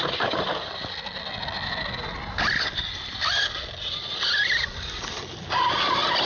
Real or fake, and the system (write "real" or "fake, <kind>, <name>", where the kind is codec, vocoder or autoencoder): real